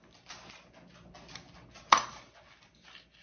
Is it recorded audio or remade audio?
recorded